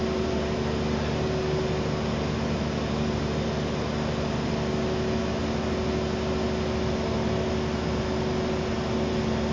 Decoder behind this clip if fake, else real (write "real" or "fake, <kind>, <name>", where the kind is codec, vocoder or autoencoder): real